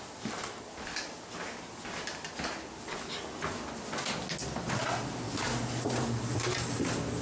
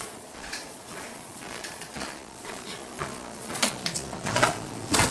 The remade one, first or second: second